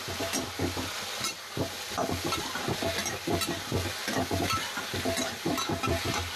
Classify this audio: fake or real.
real